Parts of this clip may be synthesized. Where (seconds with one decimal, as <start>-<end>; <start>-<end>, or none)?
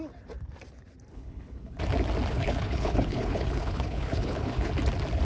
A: 1.1-1.8; 2.3-4.7